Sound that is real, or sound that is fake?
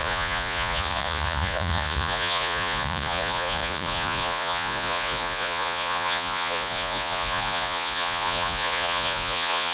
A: fake